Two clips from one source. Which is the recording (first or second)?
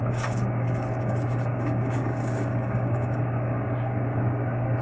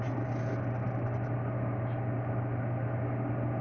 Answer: second